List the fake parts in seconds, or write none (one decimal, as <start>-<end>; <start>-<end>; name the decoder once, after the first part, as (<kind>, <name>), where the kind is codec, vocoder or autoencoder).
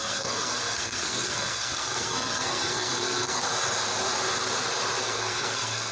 0.0-3.4 (codec, SNAC); 5.0-5.9